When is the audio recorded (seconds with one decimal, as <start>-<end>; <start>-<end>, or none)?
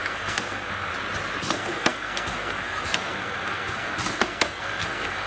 0.9-1.4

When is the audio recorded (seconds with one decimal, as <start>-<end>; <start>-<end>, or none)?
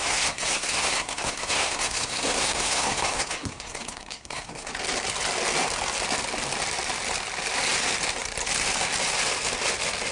4.7-10.1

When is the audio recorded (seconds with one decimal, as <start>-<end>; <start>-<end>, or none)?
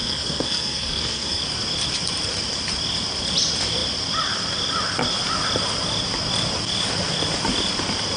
1.4-8.2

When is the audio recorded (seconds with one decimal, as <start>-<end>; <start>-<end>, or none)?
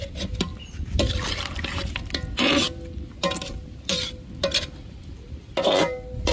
0.0-6.3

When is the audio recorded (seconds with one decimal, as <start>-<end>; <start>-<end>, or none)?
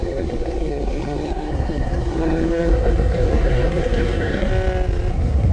4.5-5.1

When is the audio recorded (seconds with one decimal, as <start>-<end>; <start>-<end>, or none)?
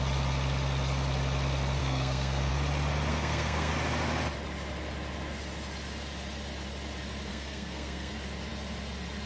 0.0-1.8; 2.5-3.1; 3.7-7.3; 8.1-9.3